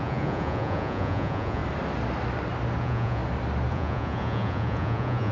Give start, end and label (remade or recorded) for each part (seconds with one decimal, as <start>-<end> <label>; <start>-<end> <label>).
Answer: 0.0-1.6 remade; 1.6-2.8 recorded; 2.8-3.2 remade; 3.2-3.7 recorded; 3.7-5.3 remade